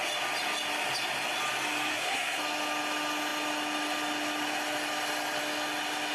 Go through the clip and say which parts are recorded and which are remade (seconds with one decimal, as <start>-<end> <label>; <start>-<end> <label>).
0.0-1.9 recorded; 1.9-2.4 remade; 2.4-6.1 recorded